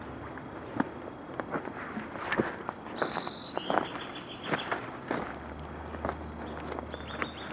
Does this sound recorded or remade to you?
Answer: recorded